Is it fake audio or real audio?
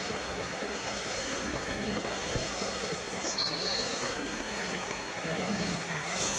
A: fake